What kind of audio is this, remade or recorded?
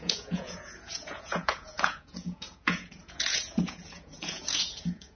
remade